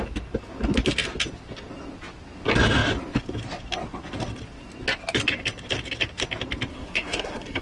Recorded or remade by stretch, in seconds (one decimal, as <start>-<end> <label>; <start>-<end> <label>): 0.0-6.7 recorded; 6.7-7.6 remade